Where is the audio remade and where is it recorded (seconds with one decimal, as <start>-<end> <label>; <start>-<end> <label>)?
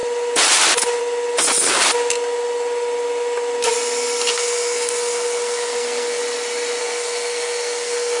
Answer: 0.0-4.3 recorded; 4.3-6.2 remade; 6.2-6.8 recorded; 6.8-8.2 remade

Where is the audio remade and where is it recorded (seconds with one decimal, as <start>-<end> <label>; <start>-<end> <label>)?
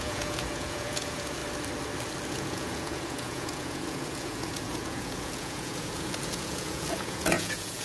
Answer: 0.0-1.4 remade; 1.4-2.3 recorded; 2.3-7.8 remade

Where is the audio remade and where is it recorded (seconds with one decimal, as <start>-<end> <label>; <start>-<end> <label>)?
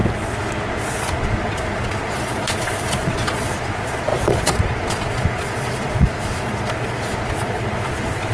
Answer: 0.0-0.7 recorded; 0.7-8.3 remade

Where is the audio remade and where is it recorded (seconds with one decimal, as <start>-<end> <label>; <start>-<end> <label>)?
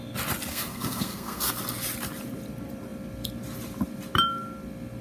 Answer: 0.0-0.5 recorded; 0.5-1.4 remade; 1.4-5.0 recorded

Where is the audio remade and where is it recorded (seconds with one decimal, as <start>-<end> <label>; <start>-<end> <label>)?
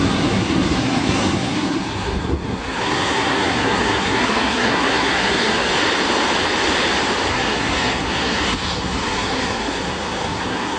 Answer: 0.0-5.7 remade; 5.7-7.3 recorded; 7.3-10.8 remade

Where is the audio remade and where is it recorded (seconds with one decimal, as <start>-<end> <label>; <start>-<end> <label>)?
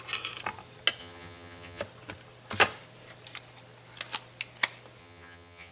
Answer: 0.0-1.0 recorded; 1.0-1.8 remade; 1.8-5.0 recorded; 5.0-5.7 remade